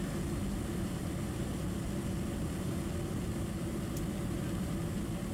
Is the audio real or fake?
real